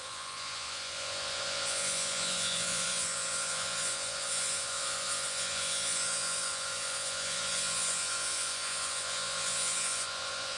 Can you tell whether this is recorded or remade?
remade